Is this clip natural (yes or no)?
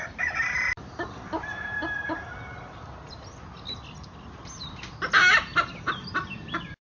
yes